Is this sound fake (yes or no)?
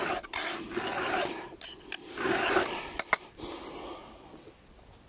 no